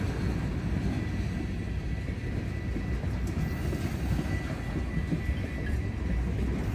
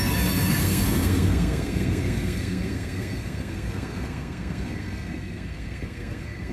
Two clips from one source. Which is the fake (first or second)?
second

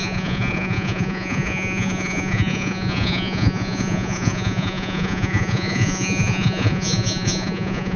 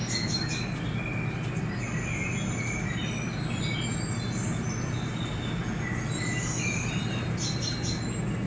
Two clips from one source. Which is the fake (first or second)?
first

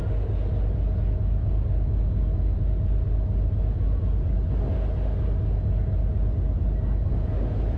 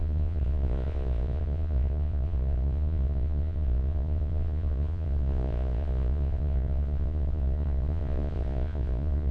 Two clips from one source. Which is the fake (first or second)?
second